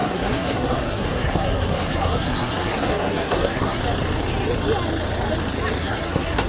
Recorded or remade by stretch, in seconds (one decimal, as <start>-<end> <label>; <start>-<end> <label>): 0.0-3.8 remade; 3.8-5.8 recorded; 5.8-6.5 remade